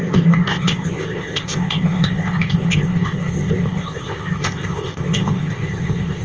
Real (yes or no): no